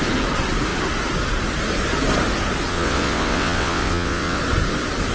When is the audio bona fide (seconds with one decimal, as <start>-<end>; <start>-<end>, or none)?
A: 0.0-2.7; 4.4-5.1